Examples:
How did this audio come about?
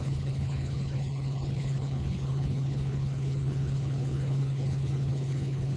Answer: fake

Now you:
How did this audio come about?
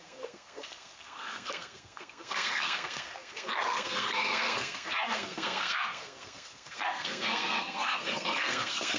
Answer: fake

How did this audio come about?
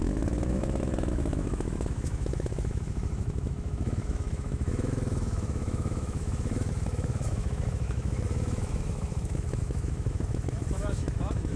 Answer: fake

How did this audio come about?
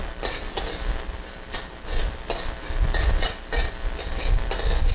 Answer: real